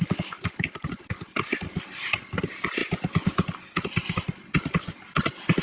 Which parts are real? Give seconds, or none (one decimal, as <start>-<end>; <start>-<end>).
0.0-5.6